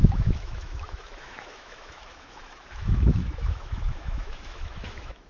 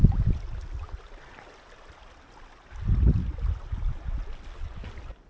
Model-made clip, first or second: first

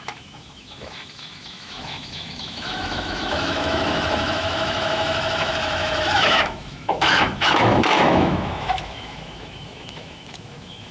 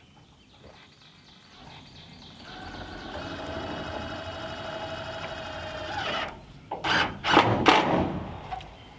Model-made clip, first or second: first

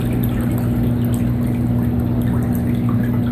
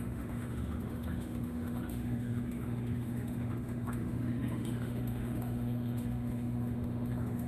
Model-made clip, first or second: second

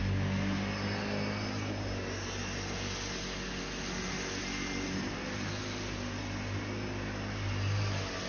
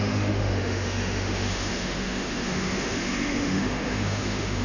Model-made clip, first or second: second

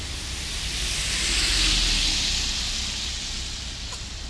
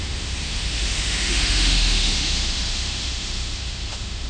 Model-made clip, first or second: second